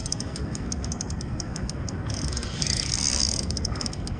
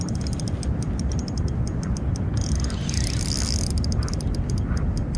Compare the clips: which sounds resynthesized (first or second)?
first